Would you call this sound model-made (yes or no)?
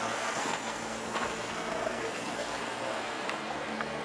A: yes